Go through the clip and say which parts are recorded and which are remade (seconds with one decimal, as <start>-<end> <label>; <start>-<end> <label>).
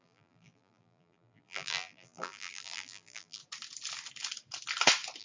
0.0-3.4 remade; 3.4-5.2 recorded